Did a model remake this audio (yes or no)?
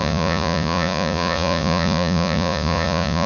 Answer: yes